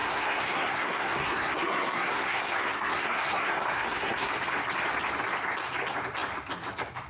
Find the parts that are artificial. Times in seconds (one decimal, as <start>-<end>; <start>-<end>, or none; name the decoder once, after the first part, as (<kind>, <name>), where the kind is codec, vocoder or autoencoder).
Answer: 0.0-4.3 (codec, SNAC)